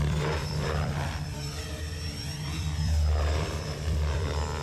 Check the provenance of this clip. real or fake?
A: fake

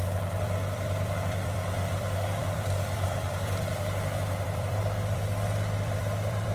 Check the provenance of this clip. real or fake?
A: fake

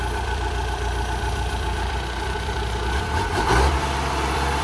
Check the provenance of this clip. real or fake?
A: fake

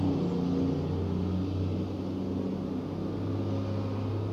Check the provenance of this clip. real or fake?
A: real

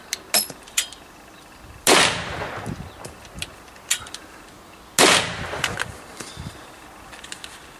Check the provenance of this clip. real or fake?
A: real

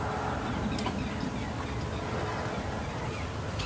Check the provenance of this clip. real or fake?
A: real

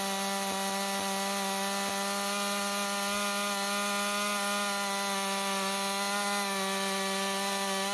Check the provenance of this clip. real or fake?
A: real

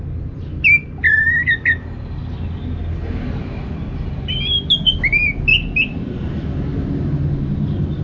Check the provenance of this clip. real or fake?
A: real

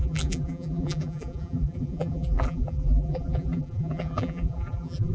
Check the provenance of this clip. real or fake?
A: fake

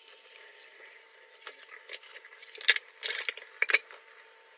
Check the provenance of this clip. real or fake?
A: real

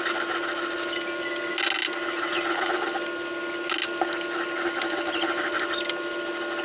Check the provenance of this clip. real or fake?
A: real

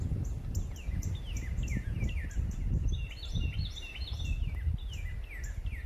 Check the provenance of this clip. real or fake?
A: real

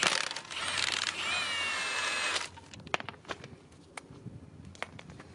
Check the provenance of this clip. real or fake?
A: real